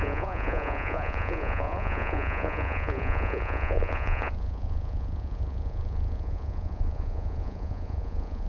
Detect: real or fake fake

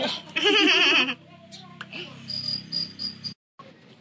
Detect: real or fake real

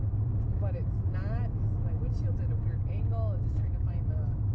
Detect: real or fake real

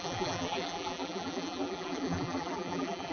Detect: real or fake fake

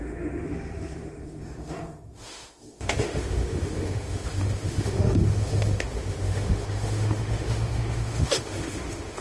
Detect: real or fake fake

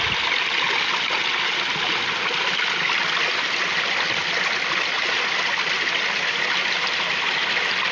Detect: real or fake real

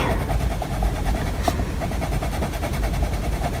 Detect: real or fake real